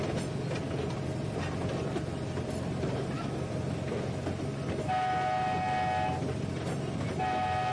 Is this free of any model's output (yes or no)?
yes